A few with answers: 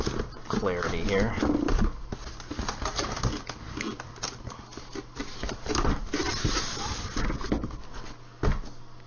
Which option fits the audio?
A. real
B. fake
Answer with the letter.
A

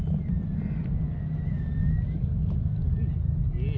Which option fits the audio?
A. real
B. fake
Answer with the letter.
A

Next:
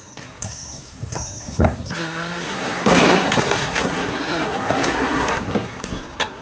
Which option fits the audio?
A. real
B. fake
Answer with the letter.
B